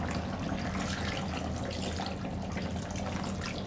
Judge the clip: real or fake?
real